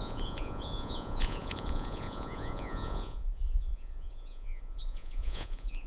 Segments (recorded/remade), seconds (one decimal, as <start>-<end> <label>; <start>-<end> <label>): 0.0-5.9 remade